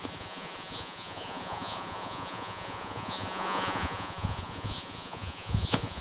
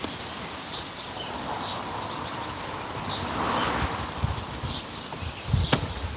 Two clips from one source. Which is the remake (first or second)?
first